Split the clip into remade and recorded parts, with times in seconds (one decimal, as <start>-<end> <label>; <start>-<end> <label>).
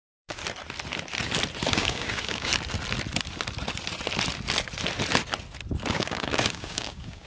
0.0-0.4 remade; 0.4-1.7 recorded; 1.7-2.5 remade; 2.5-5.9 recorded; 5.9-7.3 remade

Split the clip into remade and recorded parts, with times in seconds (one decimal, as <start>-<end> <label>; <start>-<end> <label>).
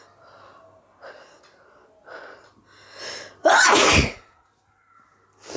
0.0-3.4 recorded; 3.4-4.5 remade; 4.5-5.6 recorded